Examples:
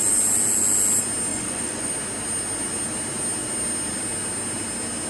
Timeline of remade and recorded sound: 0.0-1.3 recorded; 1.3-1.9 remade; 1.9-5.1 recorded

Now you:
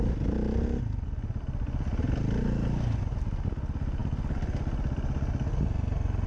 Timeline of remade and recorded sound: 0.0-6.3 recorded

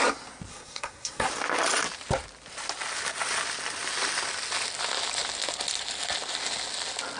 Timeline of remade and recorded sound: 0.0-0.5 recorded; 0.5-1.3 remade; 1.3-7.2 recorded

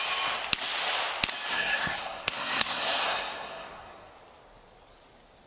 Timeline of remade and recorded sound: 0.0-1.5 recorded; 1.5-4.1 remade; 4.1-5.5 recorded

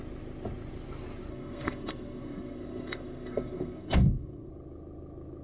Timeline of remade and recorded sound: 0.0-1.3 recorded; 1.3-4.5 remade; 4.5-5.4 recorded

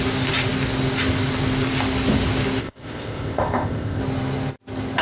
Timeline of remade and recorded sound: 0.0-2.6 recorded; 2.6-4.0 remade; 4.0-5.0 recorded

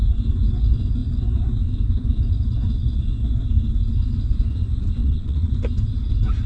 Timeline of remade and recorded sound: 0.0-5.0 recorded; 5.0-5.5 remade; 5.5-6.5 recorded

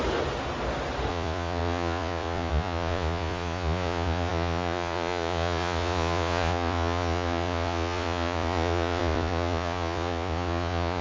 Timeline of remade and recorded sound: 0.0-1.1 recorded; 1.1-11.0 remade